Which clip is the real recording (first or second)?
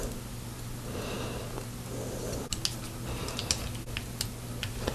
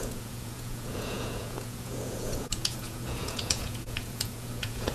first